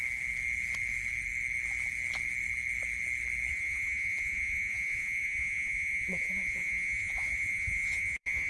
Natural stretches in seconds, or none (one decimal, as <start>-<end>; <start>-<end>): 0.0-3.5